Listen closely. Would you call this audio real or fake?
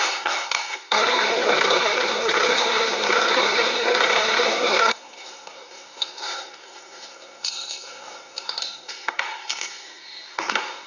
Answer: fake